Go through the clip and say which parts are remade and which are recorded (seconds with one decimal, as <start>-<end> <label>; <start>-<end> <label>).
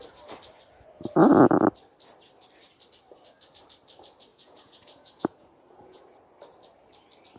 0.0-4.3 recorded; 4.3-6.0 remade; 6.0-7.4 recorded